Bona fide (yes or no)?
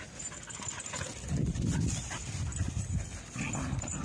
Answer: yes